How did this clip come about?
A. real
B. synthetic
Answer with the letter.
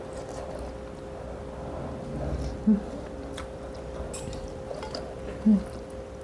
A